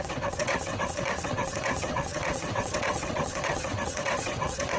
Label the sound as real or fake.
fake